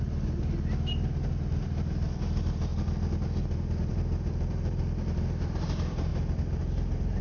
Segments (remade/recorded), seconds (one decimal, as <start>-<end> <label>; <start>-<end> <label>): 0.0-2.7 remade; 2.7-3.9 recorded; 3.9-6.1 remade; 6.1-6.6 recorded; 6.6-7.2 remade